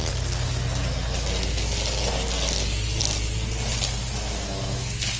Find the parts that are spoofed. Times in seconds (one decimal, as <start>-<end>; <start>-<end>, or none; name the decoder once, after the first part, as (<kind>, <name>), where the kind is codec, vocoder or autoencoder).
4.0-5.2 (autoencoder, DAC-VAE)